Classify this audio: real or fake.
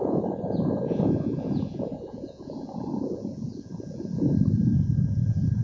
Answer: fake